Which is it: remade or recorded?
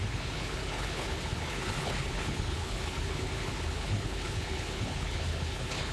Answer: remade